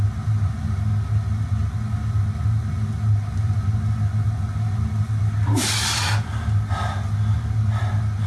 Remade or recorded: recorded